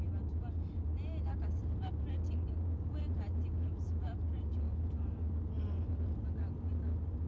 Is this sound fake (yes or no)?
no